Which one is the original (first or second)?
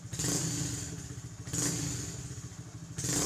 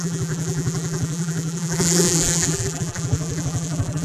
first